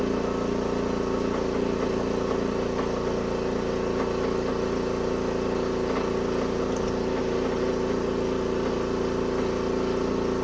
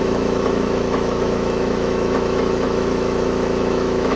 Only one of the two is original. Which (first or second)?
first